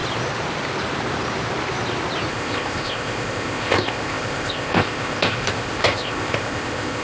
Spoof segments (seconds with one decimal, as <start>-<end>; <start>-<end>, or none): 2.3-7.0